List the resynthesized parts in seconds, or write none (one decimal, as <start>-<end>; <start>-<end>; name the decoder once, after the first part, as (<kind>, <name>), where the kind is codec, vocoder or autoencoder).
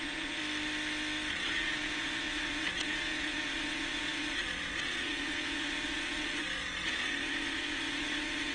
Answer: 0.0-0.4 (vocoder, Vocos); 1.3-8.5